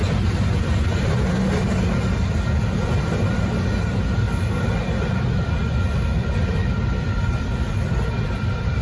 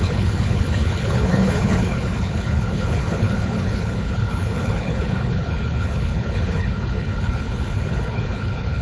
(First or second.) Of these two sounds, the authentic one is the first